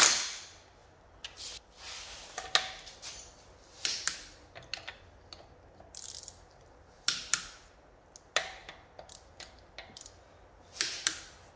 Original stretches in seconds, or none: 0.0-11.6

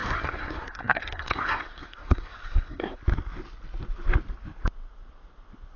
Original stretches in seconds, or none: 3.0-5.8

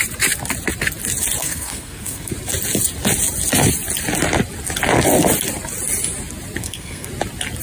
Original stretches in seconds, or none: 0.0-1.4; 2.3-6.6; 7.1-7.6

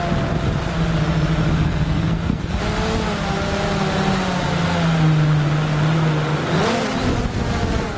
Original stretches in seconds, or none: 0.0-1.6; 2.6-8.0